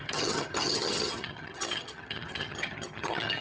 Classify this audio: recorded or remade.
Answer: remade